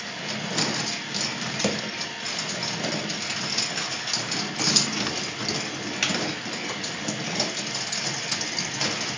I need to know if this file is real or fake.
real